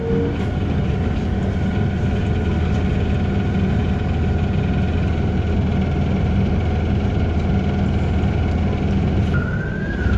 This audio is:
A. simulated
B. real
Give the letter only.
B